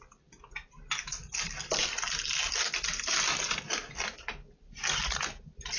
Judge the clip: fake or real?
real